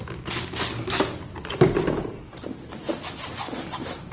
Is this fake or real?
real